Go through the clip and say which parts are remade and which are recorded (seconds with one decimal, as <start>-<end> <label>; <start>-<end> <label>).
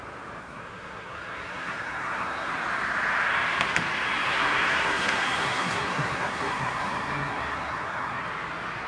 0.0-0.4 recorded; 0.4-2.5 remade; 2.5-4.2 recorded; 4.2-8.2 remade; 8.2-8.9 recorded